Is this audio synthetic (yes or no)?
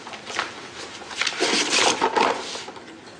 no